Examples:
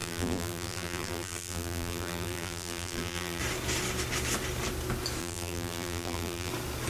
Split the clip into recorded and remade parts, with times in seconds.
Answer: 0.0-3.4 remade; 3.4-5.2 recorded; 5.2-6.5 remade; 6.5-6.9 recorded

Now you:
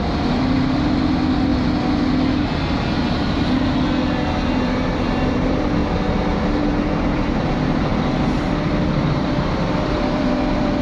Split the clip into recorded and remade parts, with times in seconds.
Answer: 0.0-1.5 remade; 1.5-4.4 recorded; 4.4-5.8 remade; 5.8-6.6 recorded; 6.6-7.9 remade; 7.9-9.0 recorded; 9.0-10.8 remade

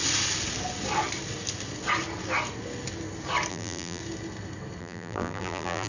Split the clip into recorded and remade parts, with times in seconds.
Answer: 0.0-3.5 recorded; 3.5-4.0 remade; 4.0-4.8 recorded; 4.8-5.9 remade